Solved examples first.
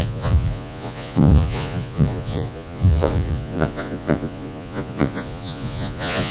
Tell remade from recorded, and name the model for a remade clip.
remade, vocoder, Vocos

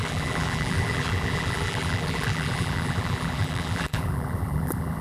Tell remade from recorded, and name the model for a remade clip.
remade, vocoder, BigVGAN v2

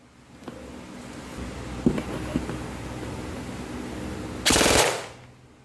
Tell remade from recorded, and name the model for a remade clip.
recorded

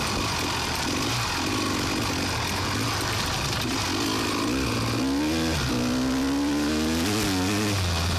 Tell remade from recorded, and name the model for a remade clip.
recorded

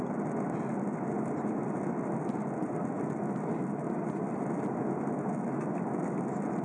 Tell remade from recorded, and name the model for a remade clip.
recorded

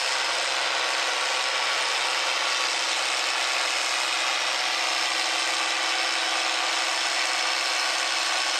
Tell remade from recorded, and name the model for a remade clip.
recorded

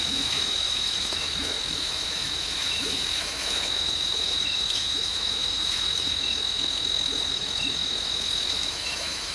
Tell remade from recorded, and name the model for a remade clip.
remade, autoencoder, DAC-VAE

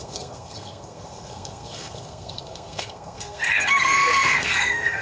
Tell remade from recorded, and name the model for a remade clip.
remade, codec, SNAC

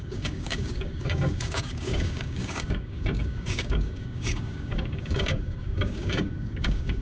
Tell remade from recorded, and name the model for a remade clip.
remade, codec, DAC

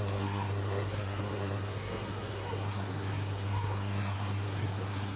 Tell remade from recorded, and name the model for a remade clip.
remade, codec, SNAC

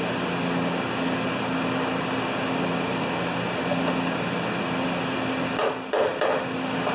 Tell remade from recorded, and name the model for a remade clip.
recorded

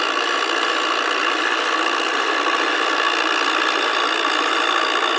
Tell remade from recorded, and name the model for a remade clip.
recorded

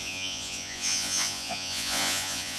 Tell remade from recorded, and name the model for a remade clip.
remade, vocoder, Vocos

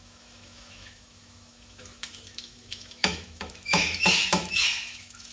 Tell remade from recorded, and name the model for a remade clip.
remade, autoencoder, DAC-VAE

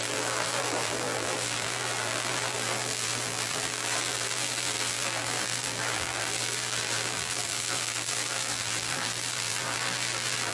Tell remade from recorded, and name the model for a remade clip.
remade, vocoder, BigVGAN v2